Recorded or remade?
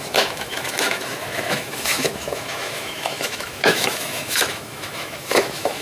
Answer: remade